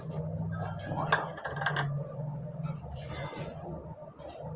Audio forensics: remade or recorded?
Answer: recorded